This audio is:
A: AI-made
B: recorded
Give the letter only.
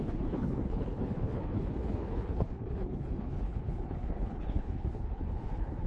A